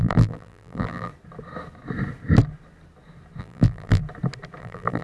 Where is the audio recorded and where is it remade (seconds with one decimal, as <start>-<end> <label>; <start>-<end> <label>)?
0.0-1.1 remade; 1.1-3.4 recorded; 3.4-4.0 remade; 4.0-4.6 recorded; 4.6-5.0 remade